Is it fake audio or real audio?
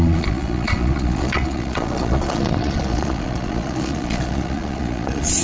fake